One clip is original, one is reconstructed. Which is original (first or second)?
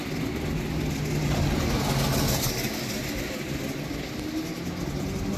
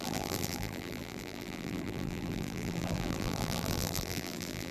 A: first